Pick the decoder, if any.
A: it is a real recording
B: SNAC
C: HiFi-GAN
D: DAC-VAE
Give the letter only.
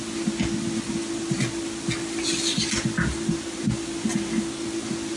A